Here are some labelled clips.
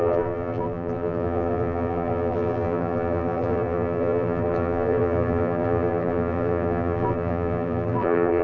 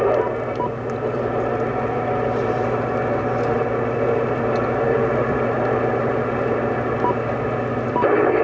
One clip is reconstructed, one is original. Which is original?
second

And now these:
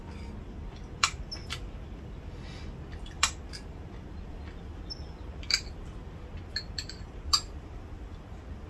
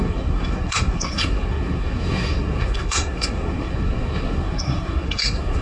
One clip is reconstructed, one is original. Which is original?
first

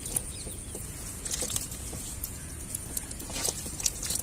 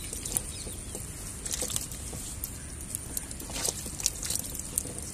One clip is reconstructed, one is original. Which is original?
second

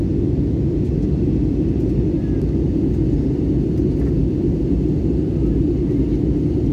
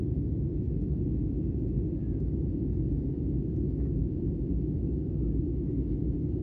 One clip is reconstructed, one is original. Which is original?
first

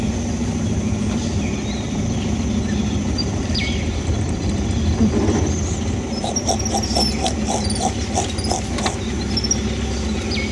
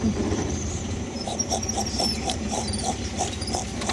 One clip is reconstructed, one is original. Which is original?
first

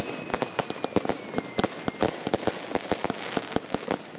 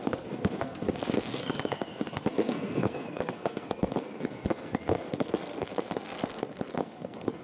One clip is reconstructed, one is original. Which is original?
first